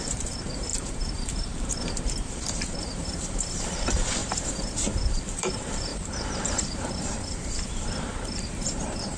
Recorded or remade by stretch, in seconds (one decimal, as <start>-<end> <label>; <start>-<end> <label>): 0.0-9.2 remade